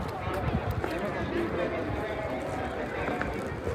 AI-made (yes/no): no